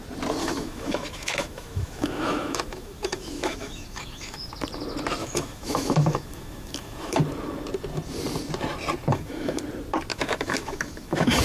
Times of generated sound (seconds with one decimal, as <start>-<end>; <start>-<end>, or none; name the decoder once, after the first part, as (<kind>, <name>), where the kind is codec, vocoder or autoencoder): 0.4-4.5 (autoencoder, DAC-VAE); 5.2-7.2; 9.1-9.6; 10.1-11.4